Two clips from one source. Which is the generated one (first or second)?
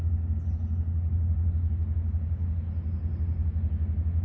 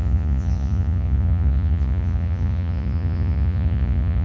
second